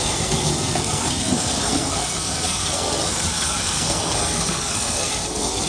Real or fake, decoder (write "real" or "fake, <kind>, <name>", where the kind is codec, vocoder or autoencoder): fake, codec, SNAC